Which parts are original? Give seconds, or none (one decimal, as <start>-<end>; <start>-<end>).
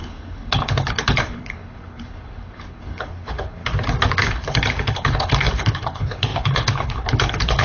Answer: 3.6-4.1